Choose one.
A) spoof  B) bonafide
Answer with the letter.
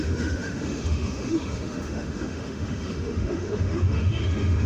A